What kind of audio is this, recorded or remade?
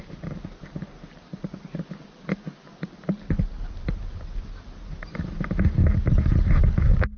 recorded